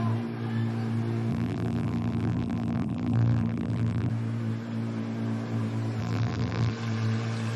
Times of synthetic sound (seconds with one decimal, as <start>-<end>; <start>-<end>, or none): 1.3-4.1; 6.0-6.7